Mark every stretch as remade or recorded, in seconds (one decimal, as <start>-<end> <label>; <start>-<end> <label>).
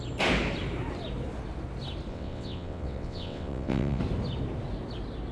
0.0-2.1 recorded; 2.1-4.0 remade; 4.0-5.3 recorded